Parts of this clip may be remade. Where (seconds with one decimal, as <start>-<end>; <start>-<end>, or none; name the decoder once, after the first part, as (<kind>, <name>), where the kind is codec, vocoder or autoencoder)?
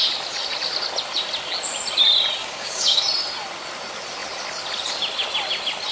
2.4-3.0 (codec, DAC)